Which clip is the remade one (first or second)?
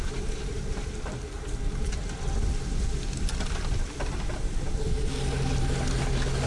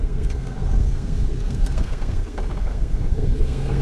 second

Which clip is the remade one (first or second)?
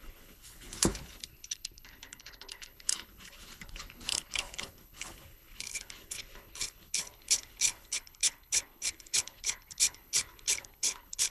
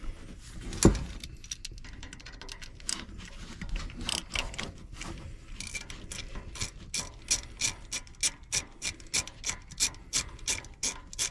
first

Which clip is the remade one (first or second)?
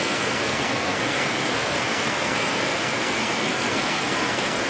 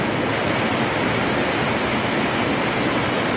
first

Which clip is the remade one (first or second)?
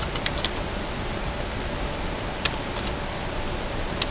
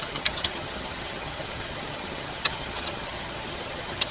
second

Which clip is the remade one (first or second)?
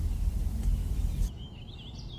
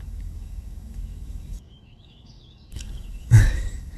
second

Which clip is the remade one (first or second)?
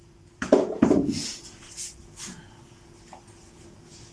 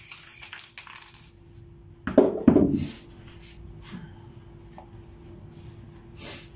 first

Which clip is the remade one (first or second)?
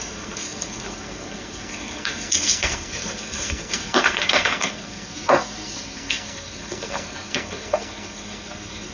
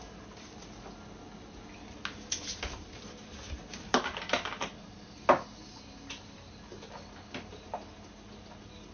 first